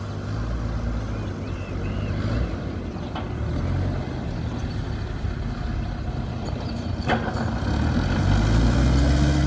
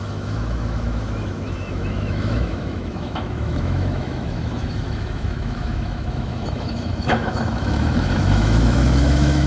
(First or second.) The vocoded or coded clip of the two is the second